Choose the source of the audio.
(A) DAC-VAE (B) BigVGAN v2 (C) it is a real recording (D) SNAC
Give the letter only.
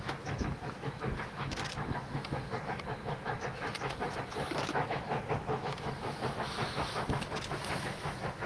A